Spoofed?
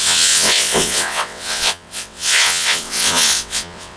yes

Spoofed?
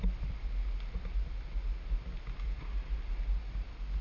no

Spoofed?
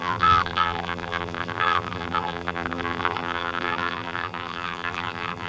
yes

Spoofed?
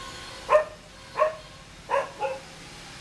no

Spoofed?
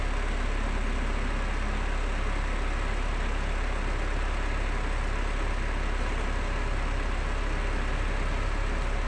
no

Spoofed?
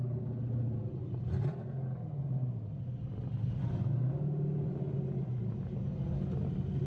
no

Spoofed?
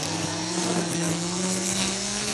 yes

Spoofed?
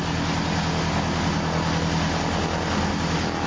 no